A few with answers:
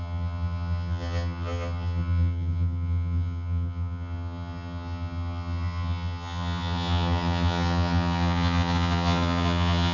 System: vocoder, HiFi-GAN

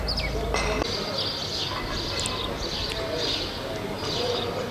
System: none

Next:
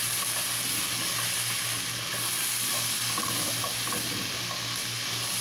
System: none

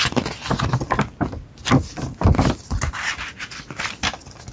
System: none